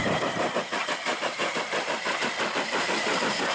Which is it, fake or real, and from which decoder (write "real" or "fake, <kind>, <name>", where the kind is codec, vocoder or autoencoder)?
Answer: fake, vocoder, BigVGAN v2